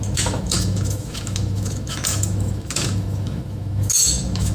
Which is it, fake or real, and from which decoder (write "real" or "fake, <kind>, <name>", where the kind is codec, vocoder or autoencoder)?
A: fake, autoencoder, DAC-VAE